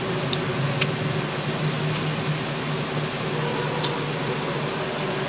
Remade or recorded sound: recorded